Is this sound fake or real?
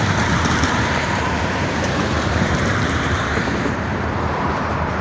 fake